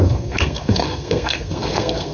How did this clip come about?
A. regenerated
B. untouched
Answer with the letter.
A